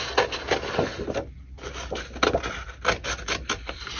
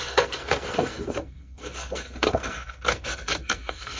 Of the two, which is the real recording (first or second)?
first